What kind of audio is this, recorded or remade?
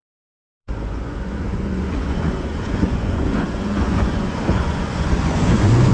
remade